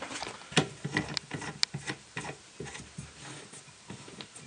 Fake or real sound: real